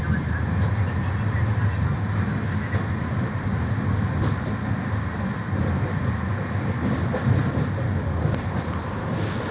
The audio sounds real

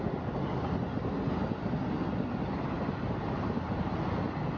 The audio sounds real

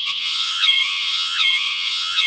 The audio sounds fake